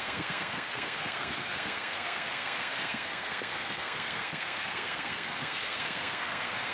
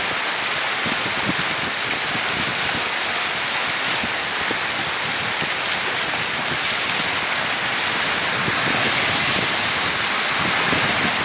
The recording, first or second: second